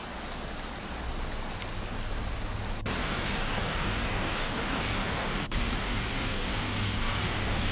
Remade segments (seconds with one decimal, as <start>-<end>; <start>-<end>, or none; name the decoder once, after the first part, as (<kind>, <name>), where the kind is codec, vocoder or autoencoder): 3.0-7.7 (codec, DAC)